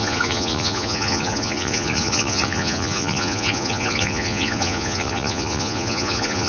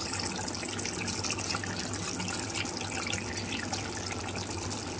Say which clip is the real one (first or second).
second